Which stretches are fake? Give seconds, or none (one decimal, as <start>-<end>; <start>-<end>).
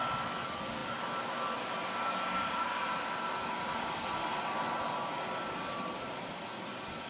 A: none